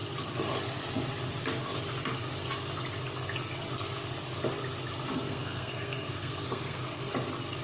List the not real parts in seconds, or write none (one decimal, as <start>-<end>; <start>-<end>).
5.1-7.1